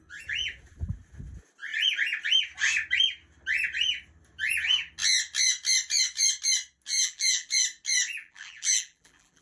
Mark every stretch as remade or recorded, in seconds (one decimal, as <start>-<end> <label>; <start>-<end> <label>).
0.0-6.9 recorded; 6.9-7.5 remade; 7.5-8.2 recorded; 8.2-9.4 remade